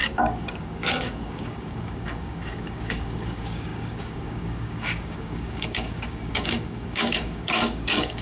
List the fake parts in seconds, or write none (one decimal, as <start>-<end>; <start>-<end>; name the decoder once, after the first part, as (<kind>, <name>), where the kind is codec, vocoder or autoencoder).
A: 0.0-8.2 (codec, DAC)